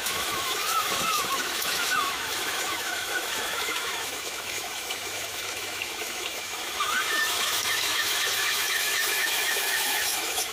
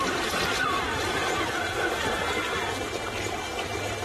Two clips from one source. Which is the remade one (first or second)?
first